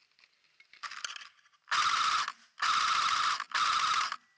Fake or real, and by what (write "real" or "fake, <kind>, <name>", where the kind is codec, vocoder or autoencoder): real